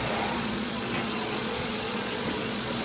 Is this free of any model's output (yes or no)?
no